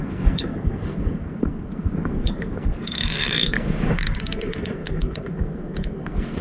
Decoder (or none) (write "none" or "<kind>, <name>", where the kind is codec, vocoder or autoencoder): codec, SNAC